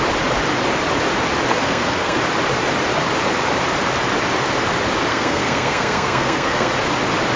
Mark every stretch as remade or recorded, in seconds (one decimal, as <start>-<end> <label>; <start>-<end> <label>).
0.0-1.5 recorded; 1.5-2.2 remade; 2.2-5.1 recorded; 5.1-6.7 remade; 6.7-7.4 recorded